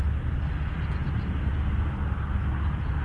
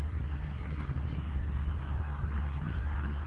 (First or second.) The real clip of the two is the first